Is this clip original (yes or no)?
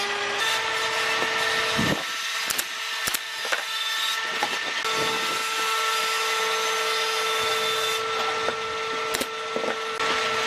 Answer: yes